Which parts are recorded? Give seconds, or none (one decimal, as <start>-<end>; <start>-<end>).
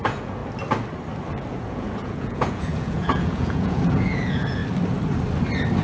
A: 0.4-1.5; 4.6-5.8